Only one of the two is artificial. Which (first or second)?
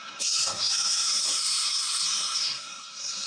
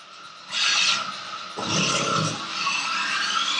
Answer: first